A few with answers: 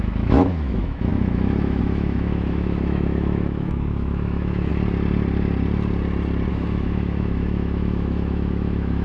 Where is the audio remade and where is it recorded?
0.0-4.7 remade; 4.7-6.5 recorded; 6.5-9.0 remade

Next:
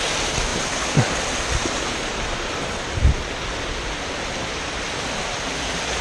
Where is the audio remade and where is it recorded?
0.0-0.5 recorded; 0.5-1.1 remade; 1.1-2.1 recorded; 2.1-2.7 remade; 2.7-6.0 recorded

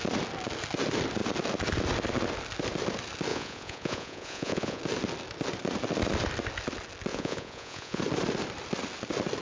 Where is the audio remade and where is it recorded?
0.0-3.3 recorded; 3.3-4.8 remade; 4.8-7.1 recorded; 7.1-8.0 remade; 8.0-9.4 recorded

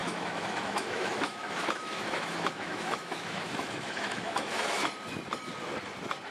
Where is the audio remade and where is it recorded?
0.0-4.8 remade; 4.8-6.3 recorded

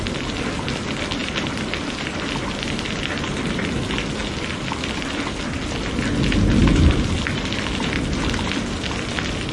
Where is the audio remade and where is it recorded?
0.0-1.2 recorded; 1.2-3.7 remade; 3.7-4.2 recorded; 4.2-5.1 remade; 5.1-6.6 recorded; 6.6-7.1 remade; 7.1-9.5 recorded